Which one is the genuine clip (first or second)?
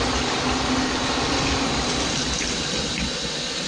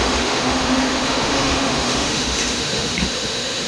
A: first